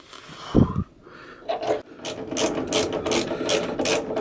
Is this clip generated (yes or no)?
no